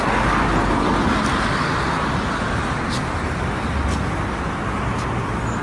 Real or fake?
real